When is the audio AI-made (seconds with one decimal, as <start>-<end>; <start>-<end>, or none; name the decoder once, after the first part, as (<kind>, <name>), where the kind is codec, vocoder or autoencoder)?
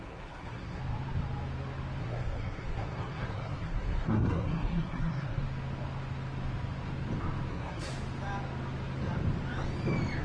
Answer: 0.0-0.8 (codec, SNAC); 2.0-5.4; 7.5-7.9